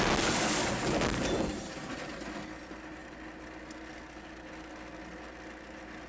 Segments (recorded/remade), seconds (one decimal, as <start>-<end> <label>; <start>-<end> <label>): 0.0-6.1 recorded

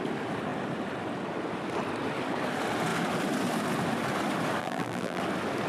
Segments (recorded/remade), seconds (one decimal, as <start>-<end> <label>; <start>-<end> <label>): 0.0-4.6 recorded; 4.6-5.2 remade; 5.2-5.7 recorded